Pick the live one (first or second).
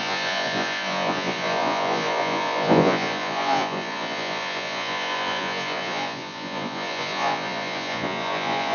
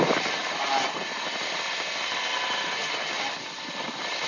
second